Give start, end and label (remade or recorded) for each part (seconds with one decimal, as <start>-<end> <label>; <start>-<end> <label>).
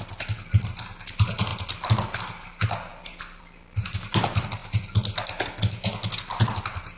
0.0-7.0 recorded